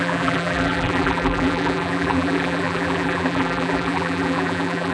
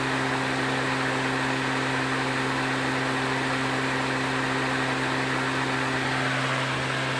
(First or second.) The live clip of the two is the second